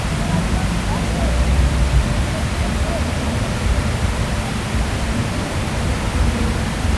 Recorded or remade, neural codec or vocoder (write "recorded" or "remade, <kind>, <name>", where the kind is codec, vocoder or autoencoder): remade, vocoder, BigVGAN v2